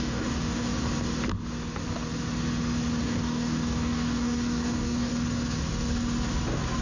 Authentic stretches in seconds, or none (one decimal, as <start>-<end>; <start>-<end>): 0.7-3.0; 5.1-6.8